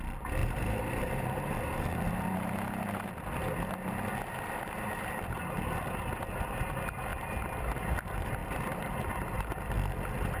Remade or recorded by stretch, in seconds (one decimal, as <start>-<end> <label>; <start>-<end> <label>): 0.0-0.4 recorded; 0.4-3.1 remade; 3.1-7.1 recorded; 7.1-7.8 remade; 7.8-10.4 recorded